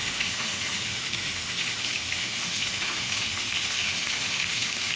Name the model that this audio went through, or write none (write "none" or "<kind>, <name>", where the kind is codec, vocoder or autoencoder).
autoencoder, DAC-VAE